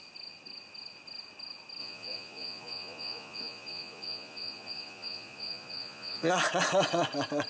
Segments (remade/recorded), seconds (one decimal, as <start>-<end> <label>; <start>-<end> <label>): 0.0-1.8 recorded; 1.8-6.3 remade; 6.3-7.5 recorded